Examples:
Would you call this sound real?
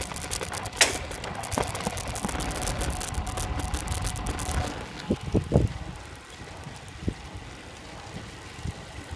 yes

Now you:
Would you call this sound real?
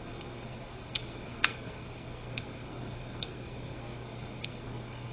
no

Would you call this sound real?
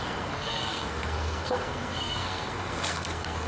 no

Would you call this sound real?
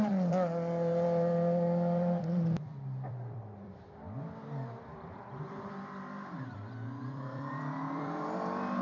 no